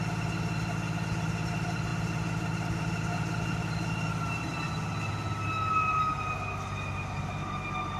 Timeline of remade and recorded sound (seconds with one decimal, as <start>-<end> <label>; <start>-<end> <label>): 0.0-8.0 recorded